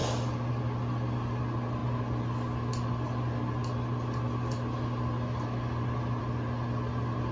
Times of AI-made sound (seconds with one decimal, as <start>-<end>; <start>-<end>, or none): none